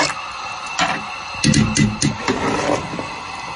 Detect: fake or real real